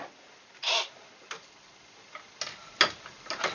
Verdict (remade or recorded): recorded